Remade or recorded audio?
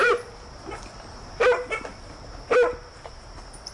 recorded